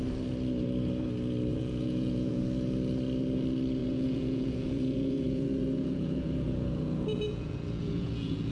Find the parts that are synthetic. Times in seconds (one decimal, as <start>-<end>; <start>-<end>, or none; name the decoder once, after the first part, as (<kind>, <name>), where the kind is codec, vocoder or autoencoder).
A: 1.5-2.4 (vocoder, Vocos); 3.8-8.5